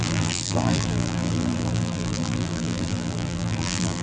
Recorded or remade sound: remade